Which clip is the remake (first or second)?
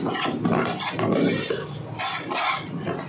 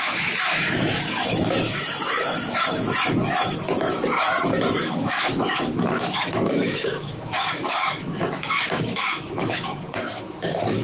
second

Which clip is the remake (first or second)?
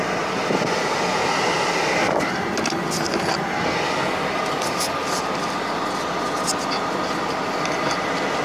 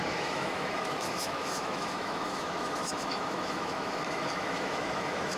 second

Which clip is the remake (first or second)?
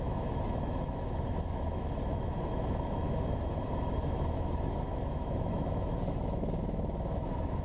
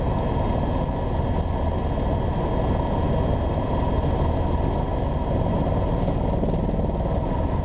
first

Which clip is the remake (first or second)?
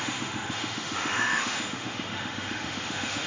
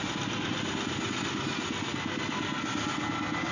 first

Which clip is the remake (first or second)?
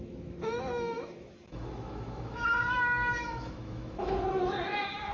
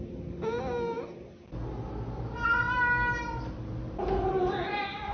first